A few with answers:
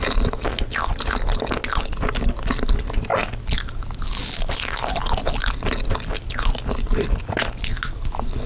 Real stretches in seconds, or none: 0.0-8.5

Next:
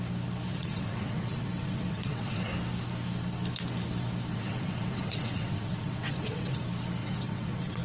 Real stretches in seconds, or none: 0.0-0.5; 2.5-4.3; 6.6-7.0

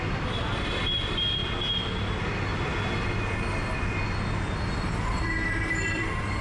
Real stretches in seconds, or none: 1.4-5.1

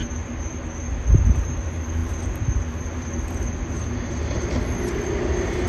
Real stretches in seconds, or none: 0.0-5.7

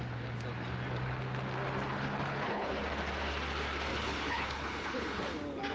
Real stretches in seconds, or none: 0.0-1.9; 2.8-3.9; 5.2-5.7

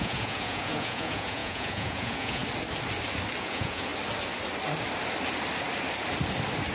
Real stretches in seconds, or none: 2.4-3.4; 3.9-6.7

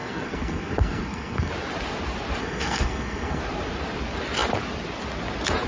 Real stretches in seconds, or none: 1.5-2.4; 3.4-5.7

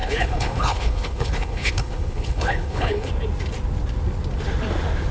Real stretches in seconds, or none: 3.1-5.1